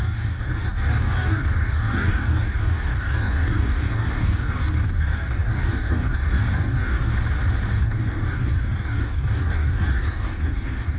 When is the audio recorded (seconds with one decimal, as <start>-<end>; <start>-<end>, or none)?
7.1-7.8